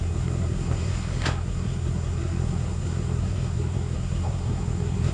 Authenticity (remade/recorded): remade